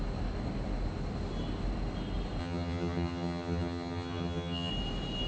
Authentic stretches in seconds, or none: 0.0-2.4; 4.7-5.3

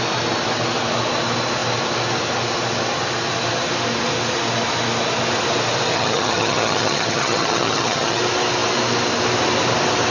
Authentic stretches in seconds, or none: 0.0-5.9; 8.2-10.1